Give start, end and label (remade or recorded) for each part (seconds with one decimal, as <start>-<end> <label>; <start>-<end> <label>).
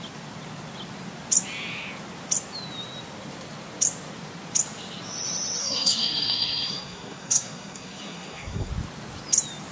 0.0-5.6 recorded; 5.6-8.7 remade; 8.7-9.7 recorded